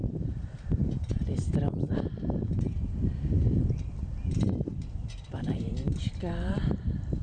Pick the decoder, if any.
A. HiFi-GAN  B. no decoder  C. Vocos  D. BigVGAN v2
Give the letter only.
D